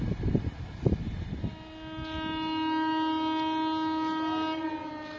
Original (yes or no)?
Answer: yes